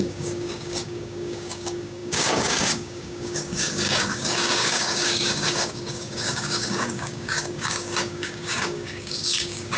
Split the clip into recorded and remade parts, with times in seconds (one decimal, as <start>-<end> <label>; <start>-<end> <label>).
0.0-9.8 remade